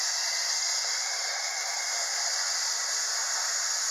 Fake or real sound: real